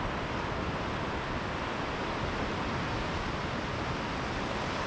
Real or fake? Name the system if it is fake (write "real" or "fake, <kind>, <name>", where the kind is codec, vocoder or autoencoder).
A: real